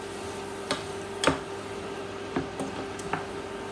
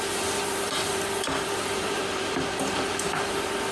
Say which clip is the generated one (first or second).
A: second